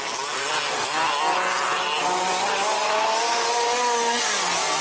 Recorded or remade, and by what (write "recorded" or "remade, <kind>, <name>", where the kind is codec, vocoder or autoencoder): recorded